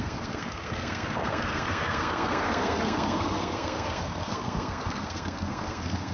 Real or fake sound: fake